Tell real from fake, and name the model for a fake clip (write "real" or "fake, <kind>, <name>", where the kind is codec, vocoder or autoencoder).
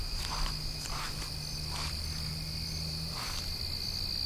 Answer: real